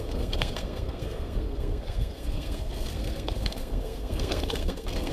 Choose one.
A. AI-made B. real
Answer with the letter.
A